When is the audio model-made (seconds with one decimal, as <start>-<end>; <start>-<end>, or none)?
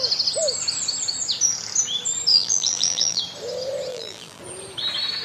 2.3-3.2; 3.9-4.4